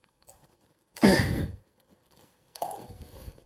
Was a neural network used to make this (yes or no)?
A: yes